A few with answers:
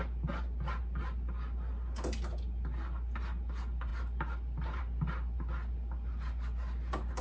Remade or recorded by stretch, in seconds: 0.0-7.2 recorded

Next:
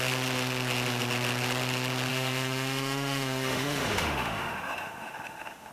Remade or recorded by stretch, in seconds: 0.0-2.1 recorded; 2.1-5.7 remade